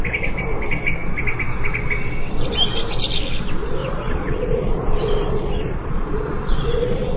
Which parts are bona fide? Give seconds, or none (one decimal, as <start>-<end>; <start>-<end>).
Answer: 0.0-3.8